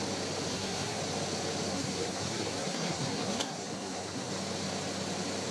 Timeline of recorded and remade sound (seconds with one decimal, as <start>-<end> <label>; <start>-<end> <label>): 0.0-0.5 recorded; 0.5-1.0 remade; 1.0-1.7 recorded; 1.7-4.3 remade; 4.3-5.5 recorded